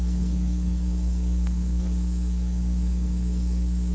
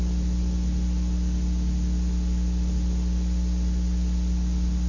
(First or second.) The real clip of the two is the second